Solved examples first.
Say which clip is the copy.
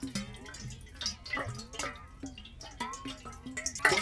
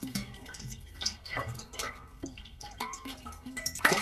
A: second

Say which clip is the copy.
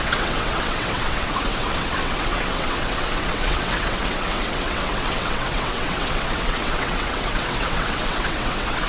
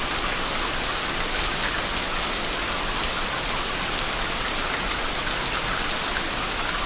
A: first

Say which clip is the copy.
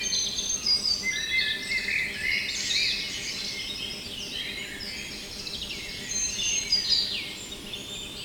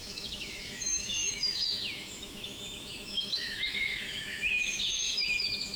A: second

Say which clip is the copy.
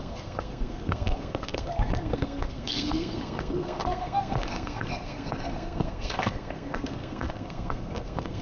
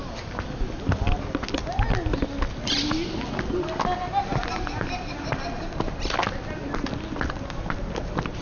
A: first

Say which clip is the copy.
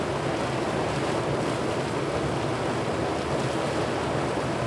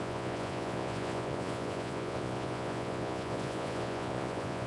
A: second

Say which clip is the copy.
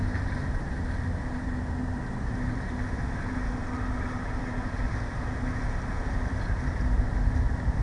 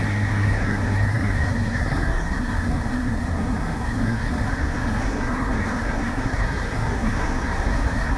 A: second